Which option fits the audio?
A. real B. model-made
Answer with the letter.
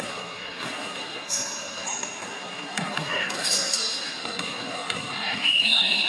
B